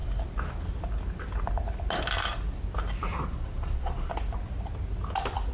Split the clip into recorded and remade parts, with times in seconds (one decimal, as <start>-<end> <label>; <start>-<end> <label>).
0.0-3.1 recorded; 3.1-4.1 remade; 4.1-5.5 recorded